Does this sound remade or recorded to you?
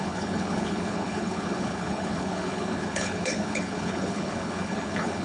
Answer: remade